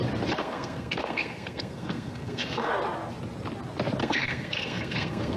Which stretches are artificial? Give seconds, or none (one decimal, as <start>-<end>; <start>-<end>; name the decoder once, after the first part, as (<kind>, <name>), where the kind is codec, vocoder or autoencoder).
0.4-2.7 (codec, SNAC); 4.0-5.4